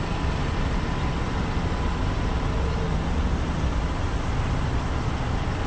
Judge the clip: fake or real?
real